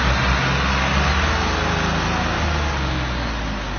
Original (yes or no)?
yes